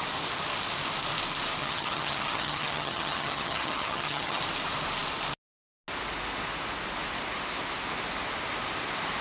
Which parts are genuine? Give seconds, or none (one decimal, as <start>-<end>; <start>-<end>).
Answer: 0.0-1.6; 4.4-9.2